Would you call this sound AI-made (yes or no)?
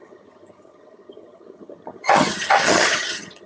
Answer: yes